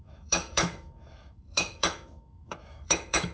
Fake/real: fake